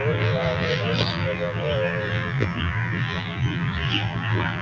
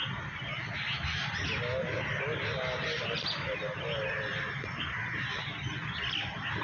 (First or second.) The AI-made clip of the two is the first